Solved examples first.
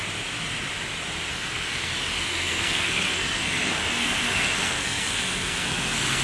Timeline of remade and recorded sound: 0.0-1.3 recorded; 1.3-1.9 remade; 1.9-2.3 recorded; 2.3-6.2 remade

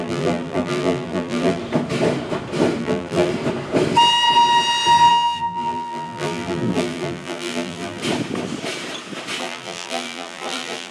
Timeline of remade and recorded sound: 0.0-1.6 remade; 1.6-2.8 recorded; 2.8-3.3 remade; 3.3-5.1 recorded; 5.1-8.0 remade; 8.0-9.4 recorded; 9.4-10.9 remade

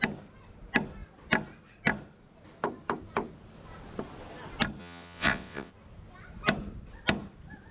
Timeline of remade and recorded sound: 0.0-4.8 recorded; 4.8-5.7 remade; 5.7-7.7 recorded